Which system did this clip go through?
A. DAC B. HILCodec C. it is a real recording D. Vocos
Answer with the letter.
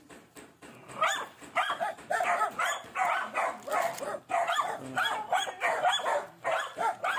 C